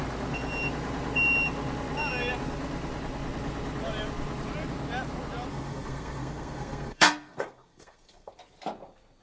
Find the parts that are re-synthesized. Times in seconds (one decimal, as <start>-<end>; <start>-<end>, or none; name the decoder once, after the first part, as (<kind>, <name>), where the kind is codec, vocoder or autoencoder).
5.5-8.3 (codec, SNAC)